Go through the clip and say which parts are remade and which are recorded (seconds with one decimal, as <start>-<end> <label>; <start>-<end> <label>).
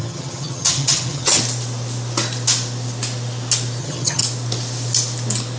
0.0-1.4 remade; 1.4-3.8 recorded; 3.8-4.2 remade; 4.2-5.6 recorded